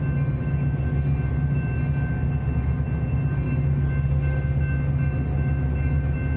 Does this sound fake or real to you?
real